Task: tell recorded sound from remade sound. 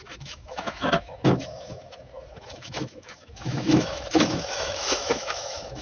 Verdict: remade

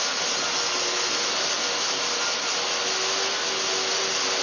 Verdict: recorded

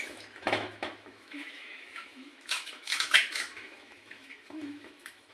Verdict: remade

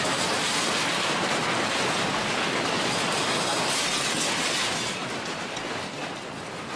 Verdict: recorded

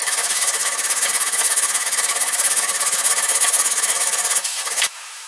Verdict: remade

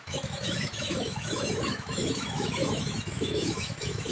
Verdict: remade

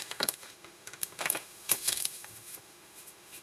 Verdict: remade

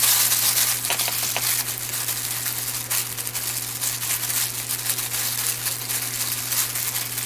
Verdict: recorded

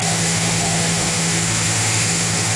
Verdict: remade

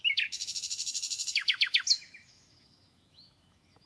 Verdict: remade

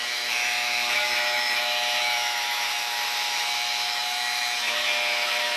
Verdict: remade